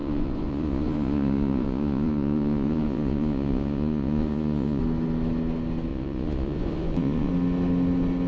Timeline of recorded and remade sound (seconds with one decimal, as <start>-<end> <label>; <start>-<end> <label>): 0.0-4.8 remade; 4.8-5.9 recorded; 5.9-7.3 remade; 7.3-8.3 recorded